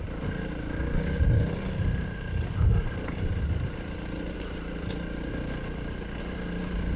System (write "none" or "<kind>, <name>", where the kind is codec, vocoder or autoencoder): none